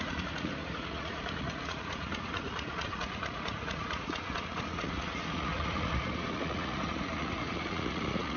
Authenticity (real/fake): fake